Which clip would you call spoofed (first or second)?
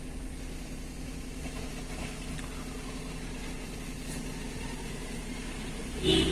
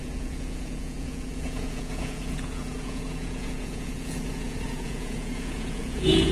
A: second